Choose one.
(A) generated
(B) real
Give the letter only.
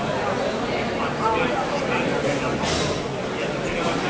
B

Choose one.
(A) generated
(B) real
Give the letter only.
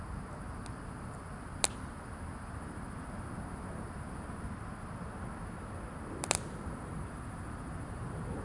B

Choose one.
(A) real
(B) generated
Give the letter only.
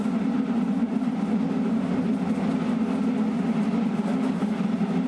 A